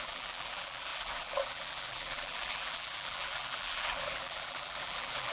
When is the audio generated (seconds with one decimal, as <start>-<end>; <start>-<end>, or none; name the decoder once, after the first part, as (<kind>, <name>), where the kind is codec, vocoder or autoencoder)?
0.0-5.3 (vocoder, BigVGAN v2)